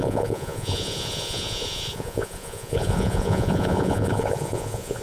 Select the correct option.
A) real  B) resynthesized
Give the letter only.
B